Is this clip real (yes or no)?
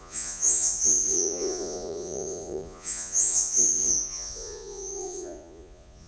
no